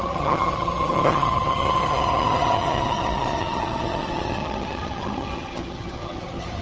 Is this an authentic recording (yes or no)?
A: no